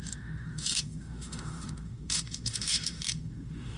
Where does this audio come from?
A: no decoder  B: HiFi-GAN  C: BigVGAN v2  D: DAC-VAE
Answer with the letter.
D